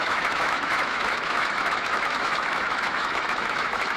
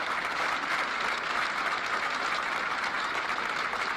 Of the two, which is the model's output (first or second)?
first